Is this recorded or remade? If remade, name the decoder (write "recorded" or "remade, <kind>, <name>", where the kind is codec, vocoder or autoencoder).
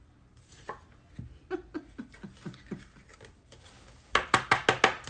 recorded